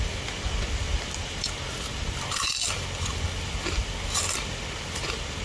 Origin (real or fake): real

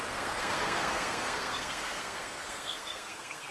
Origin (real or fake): fake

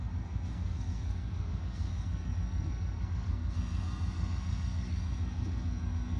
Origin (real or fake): fake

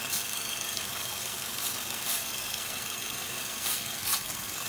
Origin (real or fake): fake